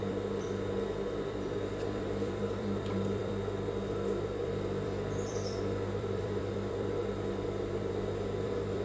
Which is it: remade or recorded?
remade